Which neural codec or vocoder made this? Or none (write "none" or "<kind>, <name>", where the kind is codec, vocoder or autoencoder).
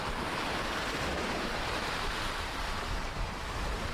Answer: vocoder, BigVGAN v2